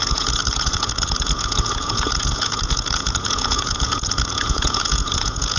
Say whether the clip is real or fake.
fake